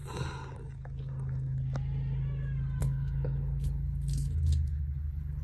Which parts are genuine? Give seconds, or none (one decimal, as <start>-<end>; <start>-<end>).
0.0-2.8